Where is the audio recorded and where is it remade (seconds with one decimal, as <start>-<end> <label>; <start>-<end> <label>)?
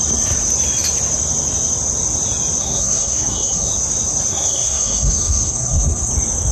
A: 0.0-2.6 recorded; 2.6-3.7 remade; 3.7-4.3 recorded; 4.3-6.1 remade; 6.1-6.5 recorded